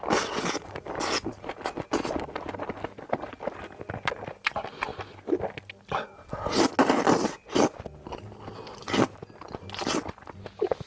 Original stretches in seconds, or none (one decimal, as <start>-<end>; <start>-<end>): 0.0-10.9